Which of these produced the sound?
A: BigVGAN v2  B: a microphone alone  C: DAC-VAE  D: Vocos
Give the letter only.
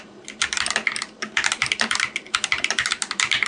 A